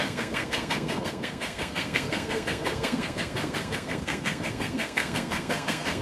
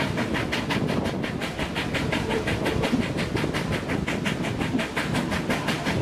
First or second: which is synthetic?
first